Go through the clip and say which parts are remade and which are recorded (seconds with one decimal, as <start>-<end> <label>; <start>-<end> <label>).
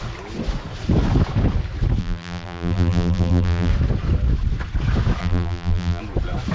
0.0-2.0 recorded; 2.0-3.7 remade; 3.7-5.2 recorded; 5.2-6.0 remade; 6.0-6.5 recorded